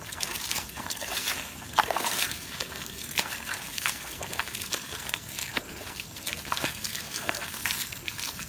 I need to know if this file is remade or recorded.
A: remade